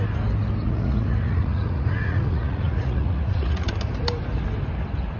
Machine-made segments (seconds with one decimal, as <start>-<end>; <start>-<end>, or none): 0.6-3.7